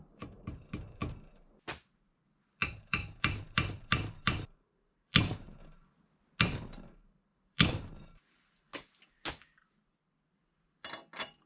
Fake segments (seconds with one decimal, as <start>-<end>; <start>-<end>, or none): 0.0-1.0; 2.8-5.6; 6.4-8.7